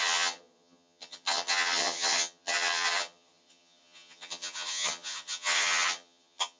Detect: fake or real fake